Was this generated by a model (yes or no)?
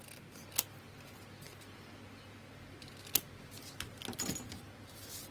no